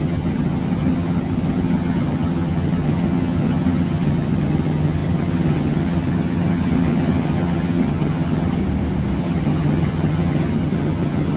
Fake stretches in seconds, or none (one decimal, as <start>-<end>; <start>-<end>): 0.0-8.6; 9.2-11.4